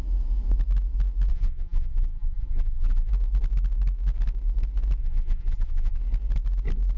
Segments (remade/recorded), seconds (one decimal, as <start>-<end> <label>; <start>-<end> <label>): 0.0-1.3 recorded; 1.3-3.1 remade; 3.1-5.0 recorded; 5.0-6.0 remade; 6.0-7.0 recorded